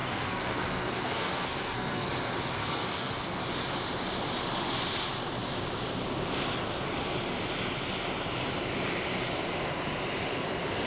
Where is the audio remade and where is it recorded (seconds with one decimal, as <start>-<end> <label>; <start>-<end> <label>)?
0.0-2.1 remade; 2.1-2.6 recorded; 2.6-3.4 remade; 3.4-10.9 recorded